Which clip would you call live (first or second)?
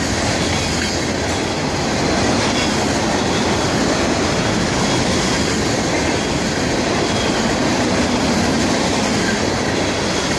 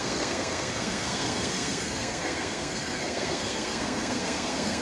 first